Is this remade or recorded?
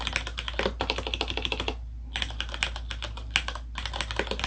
recorded